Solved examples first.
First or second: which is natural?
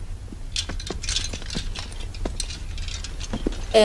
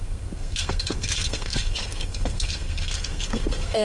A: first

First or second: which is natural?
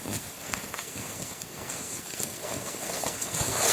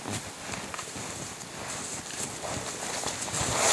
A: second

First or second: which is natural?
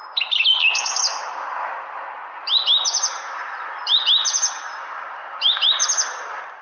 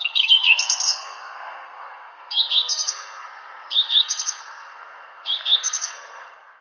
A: first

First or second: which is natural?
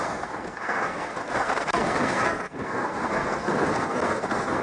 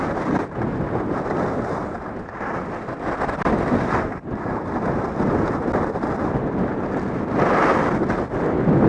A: second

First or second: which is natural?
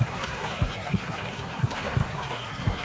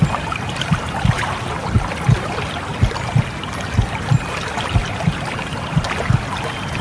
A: second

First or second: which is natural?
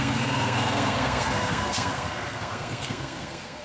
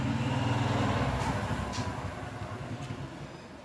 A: second